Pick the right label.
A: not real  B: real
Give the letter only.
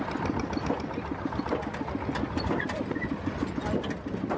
B